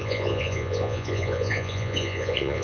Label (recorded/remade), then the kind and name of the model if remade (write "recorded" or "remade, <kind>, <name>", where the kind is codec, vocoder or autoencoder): remade, vocoder, Vocos